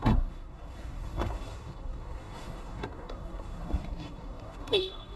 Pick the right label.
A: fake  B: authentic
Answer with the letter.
A